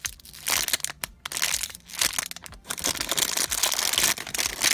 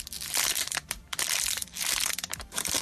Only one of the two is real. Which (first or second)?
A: first